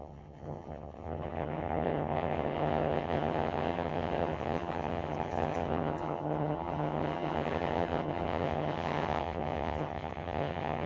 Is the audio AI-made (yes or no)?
yes